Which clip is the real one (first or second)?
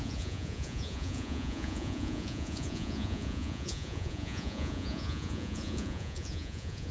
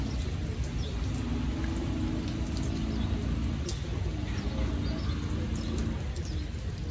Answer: second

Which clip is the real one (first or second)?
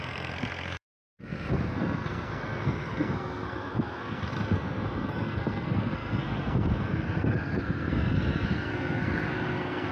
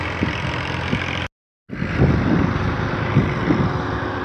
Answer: second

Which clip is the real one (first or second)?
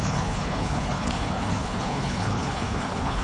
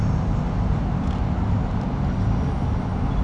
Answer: second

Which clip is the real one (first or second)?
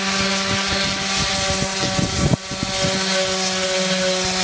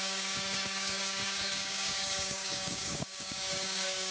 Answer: first